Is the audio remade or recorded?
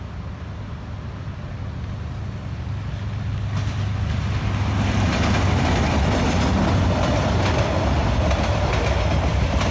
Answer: recorded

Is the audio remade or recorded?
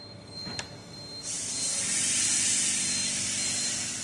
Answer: recorded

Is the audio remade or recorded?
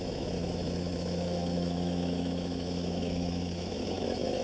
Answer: remade